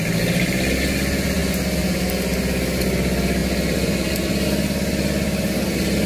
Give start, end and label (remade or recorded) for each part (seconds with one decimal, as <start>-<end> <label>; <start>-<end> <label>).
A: 0.0-6.1 recorded